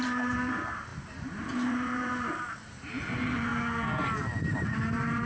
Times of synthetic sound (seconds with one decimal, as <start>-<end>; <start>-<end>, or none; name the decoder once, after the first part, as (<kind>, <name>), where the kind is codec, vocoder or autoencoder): 0.0-3.5 (vocoder, BigVGAN v2); 4.4-5.3